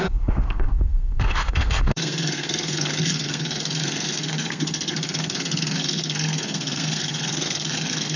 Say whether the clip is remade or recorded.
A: remade